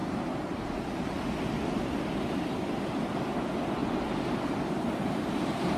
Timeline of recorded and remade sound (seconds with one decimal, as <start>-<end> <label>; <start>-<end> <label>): 0.0-1.8 recorded; 1.8-3.8 remade; 3.8-4.4 recorded; 4.4-5.8 remade

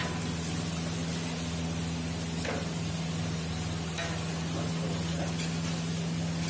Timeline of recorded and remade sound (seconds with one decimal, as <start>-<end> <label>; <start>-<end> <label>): 0.0-6.5 recorded

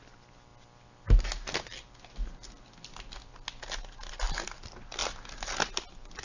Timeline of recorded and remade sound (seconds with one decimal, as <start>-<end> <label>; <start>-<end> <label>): 0.0-6.2 recorded

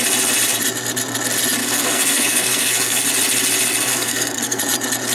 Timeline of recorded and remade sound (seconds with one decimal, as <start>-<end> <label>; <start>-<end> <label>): 0.0-1.6 recorded; 1.6-3.0 remade; 3.0-3.9 recorded; 3.9-4.6 remade; 4.6-5.1 recorded

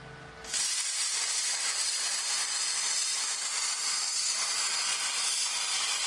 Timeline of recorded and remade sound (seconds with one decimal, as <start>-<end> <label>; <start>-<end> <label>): 0.0-6.1 recorded